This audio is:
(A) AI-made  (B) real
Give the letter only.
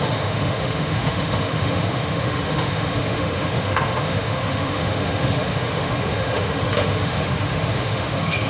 A